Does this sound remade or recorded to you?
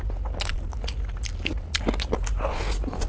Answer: recorded